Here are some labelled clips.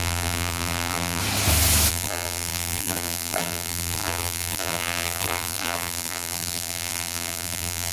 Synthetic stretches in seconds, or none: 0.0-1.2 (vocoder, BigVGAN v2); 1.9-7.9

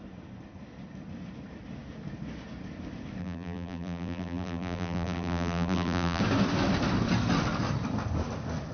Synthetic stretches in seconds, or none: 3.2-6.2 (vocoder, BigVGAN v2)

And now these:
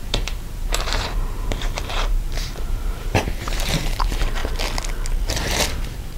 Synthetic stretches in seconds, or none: 0.0-4.4 (vocoder, BigVGAN v2); 5.3-6.2